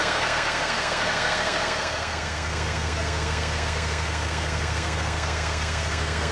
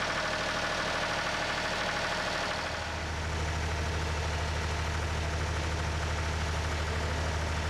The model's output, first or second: first